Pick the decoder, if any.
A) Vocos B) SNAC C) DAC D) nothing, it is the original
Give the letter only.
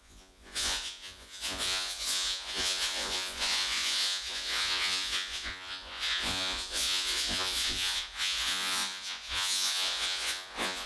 A